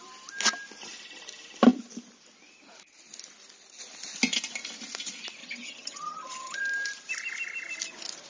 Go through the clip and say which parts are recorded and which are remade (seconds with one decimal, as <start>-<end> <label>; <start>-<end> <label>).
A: 0.0-5.4 recorded; 5.4-6.6 remade; 6.6-8.3 recorded